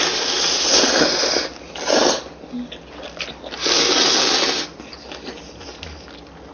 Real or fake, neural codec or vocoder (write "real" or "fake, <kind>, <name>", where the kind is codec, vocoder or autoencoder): real